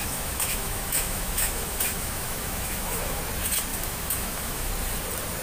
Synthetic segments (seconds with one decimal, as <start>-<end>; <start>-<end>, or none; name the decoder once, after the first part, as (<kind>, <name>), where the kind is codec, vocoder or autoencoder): 0.0-3.2 (autoencoder, DAC-VAE); 3.7-4.7